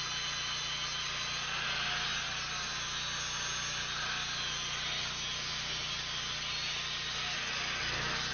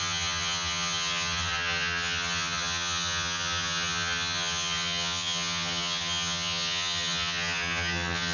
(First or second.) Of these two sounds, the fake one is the second